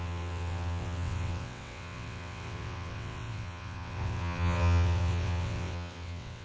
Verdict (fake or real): fake